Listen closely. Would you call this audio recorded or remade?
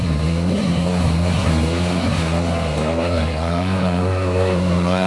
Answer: remade